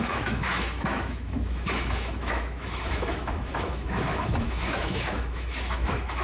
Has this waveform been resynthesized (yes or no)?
yes